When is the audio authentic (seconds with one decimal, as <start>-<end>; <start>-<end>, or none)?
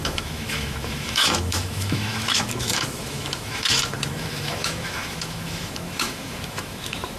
none